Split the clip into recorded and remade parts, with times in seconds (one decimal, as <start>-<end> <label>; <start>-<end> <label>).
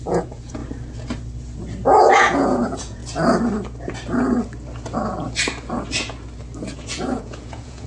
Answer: 0.0-0.6 remade; 0.6-2.0 recorded; 2.0-3.0 remade; 3.0-6.8 recorded; 6.8-7.9 remade